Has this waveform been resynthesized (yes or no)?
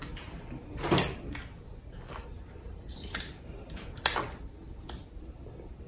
no